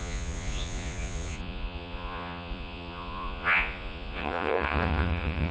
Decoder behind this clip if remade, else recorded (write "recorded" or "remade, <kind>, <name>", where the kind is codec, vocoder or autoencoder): remade, vocoder, Vocos